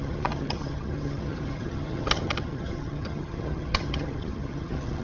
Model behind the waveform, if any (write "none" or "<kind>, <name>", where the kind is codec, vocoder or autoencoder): vocoder, HiFi-GAN